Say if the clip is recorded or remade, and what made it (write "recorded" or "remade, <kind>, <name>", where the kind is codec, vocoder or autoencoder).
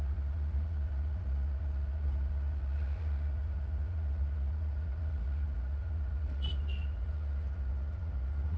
remade, vocoder, Vocos